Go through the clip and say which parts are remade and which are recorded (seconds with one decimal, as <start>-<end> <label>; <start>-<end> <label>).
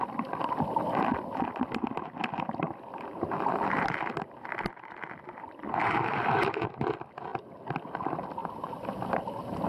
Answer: 0.0-8.4 recorded; 8.4-9.7 remade